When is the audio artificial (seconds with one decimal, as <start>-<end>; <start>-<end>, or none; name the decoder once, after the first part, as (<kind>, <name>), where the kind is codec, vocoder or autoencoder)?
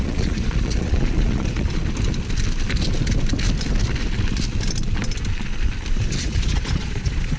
0.0-1.8 (vocoder, Vocos); 6.2-7.4